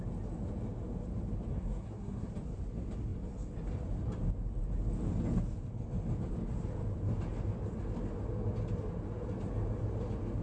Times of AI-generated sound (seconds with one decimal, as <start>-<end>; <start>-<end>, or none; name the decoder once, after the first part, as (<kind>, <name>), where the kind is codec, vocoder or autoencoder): 1.5-2.3 (codec, SNAC)